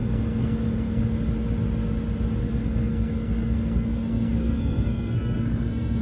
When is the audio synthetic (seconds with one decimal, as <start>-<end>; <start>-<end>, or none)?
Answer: 0.0-1.0; 2.4-6.0